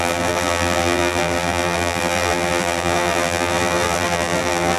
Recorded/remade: remade